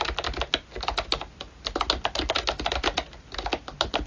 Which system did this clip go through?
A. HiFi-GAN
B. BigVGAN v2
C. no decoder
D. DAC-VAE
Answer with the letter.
C